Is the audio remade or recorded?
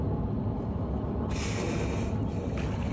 recorded